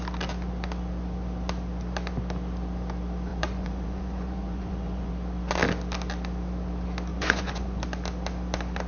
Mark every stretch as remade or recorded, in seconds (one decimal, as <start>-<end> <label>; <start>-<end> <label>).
0.0-3.3 recorded; 3.3-5.1 remade; 5.1-7.1 recorded; 7.1-7.8 remade; 7.8-8.9 recorded

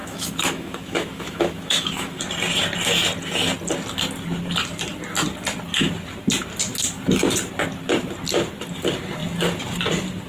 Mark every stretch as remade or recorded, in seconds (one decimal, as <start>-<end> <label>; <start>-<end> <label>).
0.0-2.2 remade; 2.2-10.3 recorded

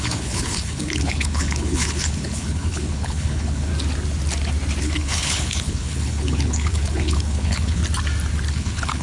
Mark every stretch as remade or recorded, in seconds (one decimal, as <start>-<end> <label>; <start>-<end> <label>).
0.0-3.7 remade; 3.7-4.8 recorded; 4.8-7.8 remade; 7.8-8.5 recorded; 8.5-9.0 remade